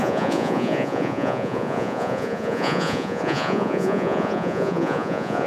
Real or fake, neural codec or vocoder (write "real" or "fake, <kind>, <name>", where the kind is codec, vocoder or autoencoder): fake, vocoder, Vocos